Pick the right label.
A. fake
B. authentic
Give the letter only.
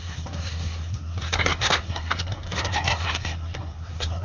A